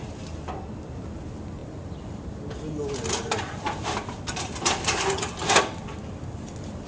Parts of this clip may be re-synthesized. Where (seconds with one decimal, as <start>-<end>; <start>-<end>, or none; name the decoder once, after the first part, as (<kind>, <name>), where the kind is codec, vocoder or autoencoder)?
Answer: none